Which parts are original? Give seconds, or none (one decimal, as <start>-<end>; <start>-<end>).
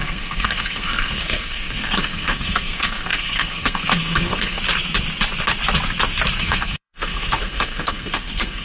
4.6-6.4